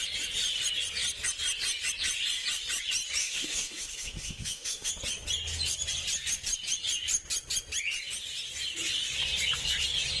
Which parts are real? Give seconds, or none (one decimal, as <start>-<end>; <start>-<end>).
0.0-3.2; 4.9-10.2